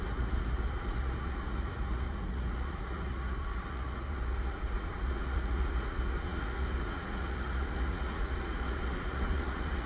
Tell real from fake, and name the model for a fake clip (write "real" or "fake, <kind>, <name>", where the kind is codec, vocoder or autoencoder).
fake, vocoder, Vocos